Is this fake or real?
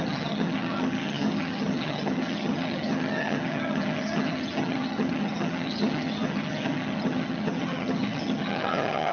fake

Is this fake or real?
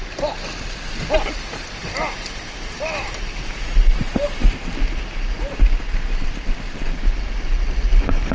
real